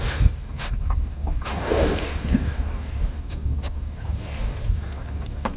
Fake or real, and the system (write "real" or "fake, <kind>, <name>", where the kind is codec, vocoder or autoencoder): fake, codec, DAC